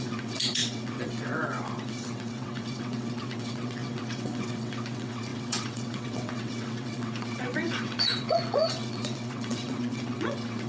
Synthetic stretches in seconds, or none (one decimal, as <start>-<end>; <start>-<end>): 0.0-10.7